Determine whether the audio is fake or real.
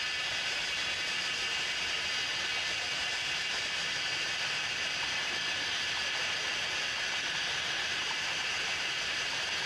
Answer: real